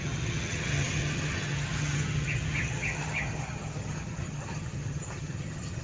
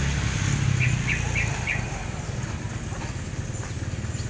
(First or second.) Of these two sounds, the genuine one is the second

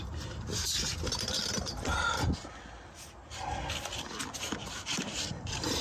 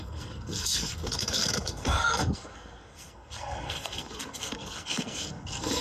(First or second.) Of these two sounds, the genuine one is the first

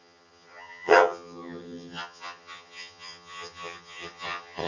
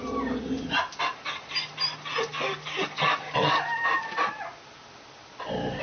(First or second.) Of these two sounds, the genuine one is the second